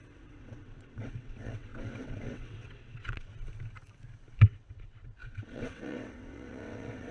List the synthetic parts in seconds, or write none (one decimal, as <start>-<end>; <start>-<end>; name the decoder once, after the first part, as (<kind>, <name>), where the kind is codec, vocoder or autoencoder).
0.0-3.3 (vocoder, WaveNeXt); 4.4-7.1